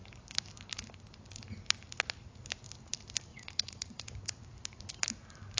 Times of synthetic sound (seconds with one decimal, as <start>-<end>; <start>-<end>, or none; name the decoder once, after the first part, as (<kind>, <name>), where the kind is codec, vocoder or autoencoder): 3.3-4.0 (vocoder, Vocos)